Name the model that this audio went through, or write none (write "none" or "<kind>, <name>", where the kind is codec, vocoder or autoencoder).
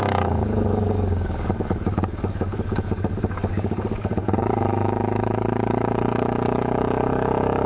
codec, DAC